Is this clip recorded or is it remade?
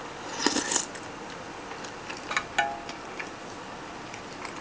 recorded